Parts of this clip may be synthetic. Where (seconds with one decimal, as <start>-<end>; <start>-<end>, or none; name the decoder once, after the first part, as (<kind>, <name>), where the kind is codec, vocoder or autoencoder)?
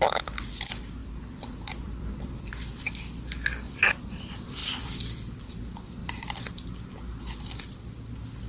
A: 1.0-2.5 (vocoder, BigVGAN v2); 4.6-5.5; 6.0-6.5